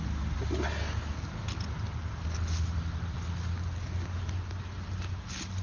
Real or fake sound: real